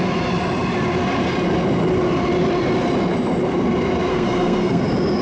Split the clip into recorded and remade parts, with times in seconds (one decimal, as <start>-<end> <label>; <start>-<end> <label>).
0.0-4.1 recorded; 4.1-4.8 remade; 4.8-5.2 recorded